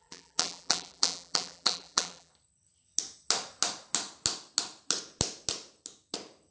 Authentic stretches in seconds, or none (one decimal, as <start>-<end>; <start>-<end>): 2.3-6.5